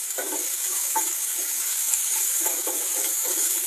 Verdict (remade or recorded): remade